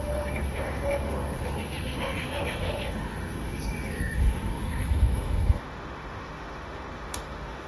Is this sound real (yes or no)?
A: no